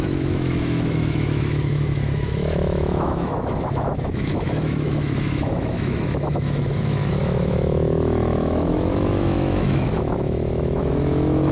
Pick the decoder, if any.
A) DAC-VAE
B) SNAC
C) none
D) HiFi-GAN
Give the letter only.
A